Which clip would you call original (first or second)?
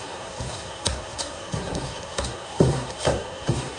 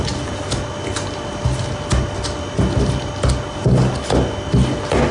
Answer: second